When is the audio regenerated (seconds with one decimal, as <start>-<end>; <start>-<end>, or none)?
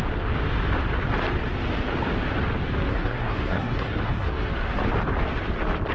2.9-4.5